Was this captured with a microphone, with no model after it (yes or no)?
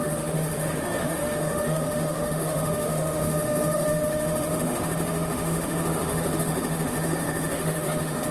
no